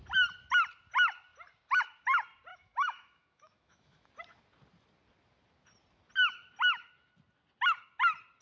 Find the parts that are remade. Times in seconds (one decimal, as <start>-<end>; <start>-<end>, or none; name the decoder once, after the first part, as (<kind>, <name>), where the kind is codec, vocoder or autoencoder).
2.5-4.1 (autoencoder, DAC-VAE)